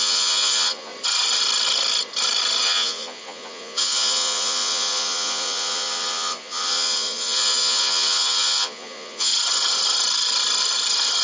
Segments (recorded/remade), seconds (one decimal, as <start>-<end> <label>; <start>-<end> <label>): 0.0-0.9 remade; 0.9-2.6 recorded; 2.6-9.3 remade; 9.3-11.2 recorded